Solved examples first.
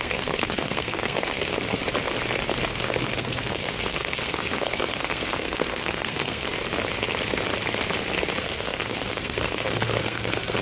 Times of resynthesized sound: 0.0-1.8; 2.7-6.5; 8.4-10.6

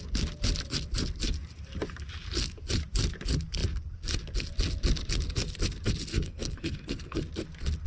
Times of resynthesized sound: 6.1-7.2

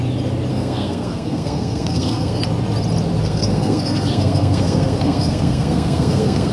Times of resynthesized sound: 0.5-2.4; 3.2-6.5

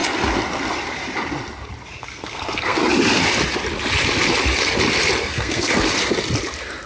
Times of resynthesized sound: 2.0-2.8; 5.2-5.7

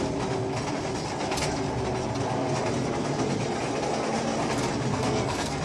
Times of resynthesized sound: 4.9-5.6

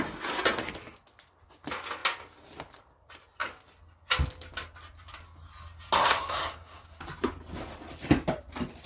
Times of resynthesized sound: 6.0-7.0

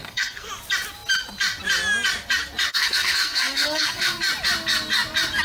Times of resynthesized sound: 0.0-0.5; 2.7-4.2